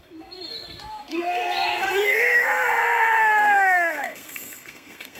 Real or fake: fake